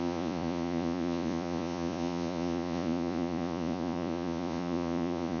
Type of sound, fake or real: fake